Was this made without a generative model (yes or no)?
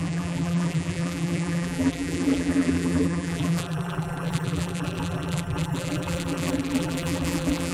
no